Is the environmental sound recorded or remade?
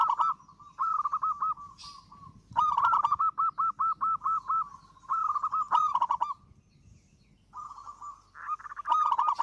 recorded